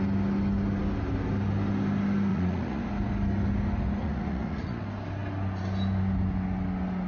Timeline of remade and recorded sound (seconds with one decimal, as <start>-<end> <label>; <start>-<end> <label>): 0.0-2.3 recorded; 2.3-2.8 remade; 2.8-4.0 recorded; 4.0-4.8 remade; 4.8-7.1 recorded